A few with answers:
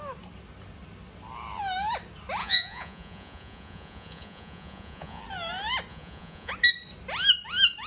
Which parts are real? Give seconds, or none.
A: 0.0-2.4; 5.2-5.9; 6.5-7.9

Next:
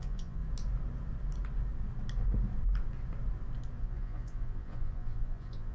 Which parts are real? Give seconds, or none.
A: 0.4-3.8

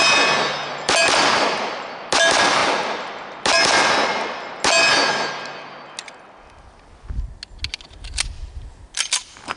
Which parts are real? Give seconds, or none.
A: 0.0-9.6

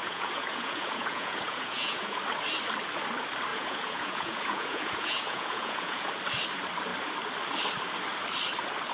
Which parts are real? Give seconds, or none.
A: 2.2-3.5; 6.1-8.9

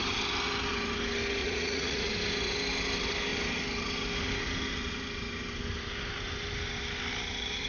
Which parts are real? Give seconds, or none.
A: 0.0-1.4; 2.1-7.7

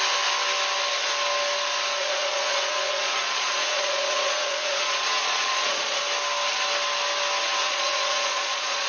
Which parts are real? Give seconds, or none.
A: 0.0-2.0; 6.0-7.6